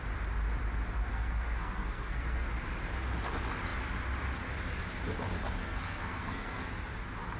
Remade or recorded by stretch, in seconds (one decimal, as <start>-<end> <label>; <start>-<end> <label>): 0.0-1.1 recorded; 1.1-2.5 remade; 2.5-5.6 recorded; 5.6-6.7 remade; 6.7-7.4 recorded